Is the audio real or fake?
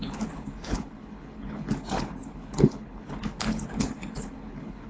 fake